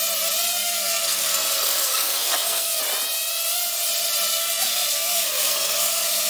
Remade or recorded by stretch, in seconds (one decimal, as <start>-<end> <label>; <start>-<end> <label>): 0.0-0.6 recorded; 0.6-2.8 remade; 2.8-4.3 recorded; 4.3-6.3 remade